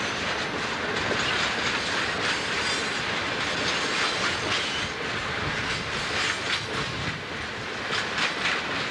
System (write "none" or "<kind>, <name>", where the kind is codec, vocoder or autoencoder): none